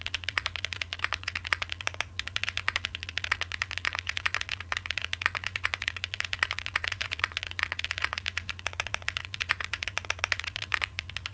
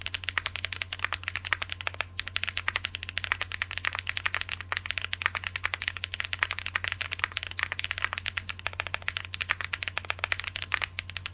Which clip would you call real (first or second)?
second